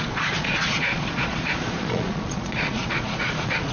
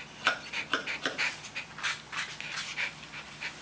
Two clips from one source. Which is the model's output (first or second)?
first